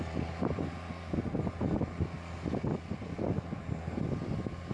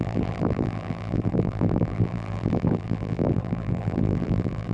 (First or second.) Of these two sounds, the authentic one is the first